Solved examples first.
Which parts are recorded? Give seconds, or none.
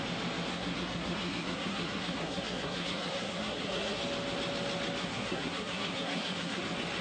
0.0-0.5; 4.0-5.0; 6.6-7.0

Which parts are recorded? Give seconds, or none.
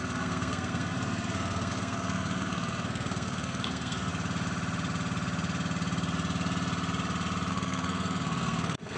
4.1-7.5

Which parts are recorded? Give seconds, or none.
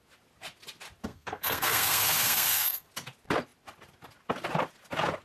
0.0-1.1; 2.9-5.2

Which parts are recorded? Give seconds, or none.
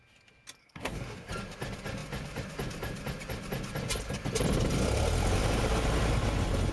0.0-0.6; 1.3-6.7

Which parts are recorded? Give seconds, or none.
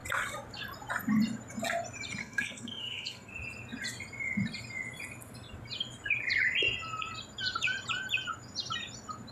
0.0-2.2; 3.3-9.3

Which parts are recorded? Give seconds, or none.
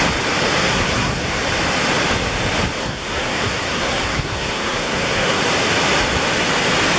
0.0-0.6; 1.4-2.8; 5.4-7.0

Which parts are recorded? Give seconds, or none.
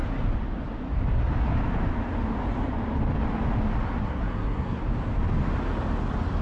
0.0-4.0; 4.8-6.4